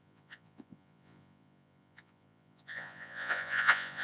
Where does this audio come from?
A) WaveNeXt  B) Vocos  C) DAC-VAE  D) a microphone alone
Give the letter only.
B